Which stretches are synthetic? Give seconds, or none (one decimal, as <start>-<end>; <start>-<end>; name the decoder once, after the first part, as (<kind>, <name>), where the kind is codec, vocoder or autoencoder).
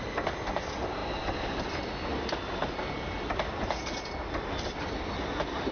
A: none